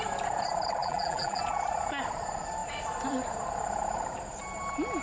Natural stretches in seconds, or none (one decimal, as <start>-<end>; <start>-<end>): 0.0-0.8; 1.4-5.0